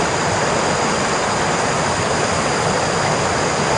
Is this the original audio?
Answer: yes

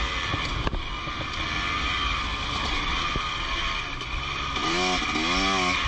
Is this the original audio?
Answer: yes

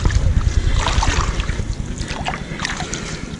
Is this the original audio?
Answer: no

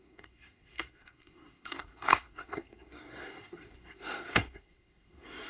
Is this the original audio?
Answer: no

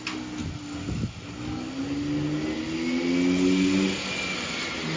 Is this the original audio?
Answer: yes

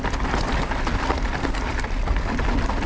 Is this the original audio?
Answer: yes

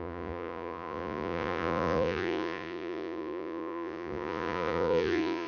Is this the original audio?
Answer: no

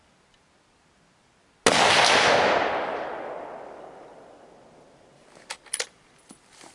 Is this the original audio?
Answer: yes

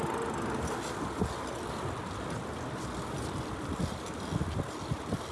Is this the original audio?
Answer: yes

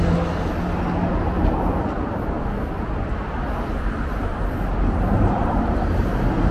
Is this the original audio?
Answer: yes